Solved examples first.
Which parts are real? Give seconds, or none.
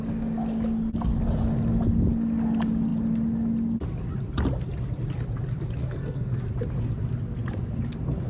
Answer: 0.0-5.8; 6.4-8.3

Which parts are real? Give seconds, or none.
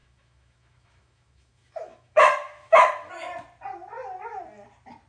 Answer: 3.1-5.1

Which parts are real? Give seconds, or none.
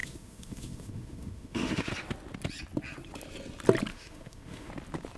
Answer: 1.9-3.9; 4.7-5.2